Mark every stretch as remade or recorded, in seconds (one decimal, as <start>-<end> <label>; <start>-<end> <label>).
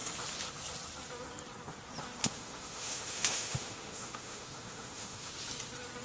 0.0-2.2 recorded; 2.2-5.3 remade; 5.3-6.0 recorded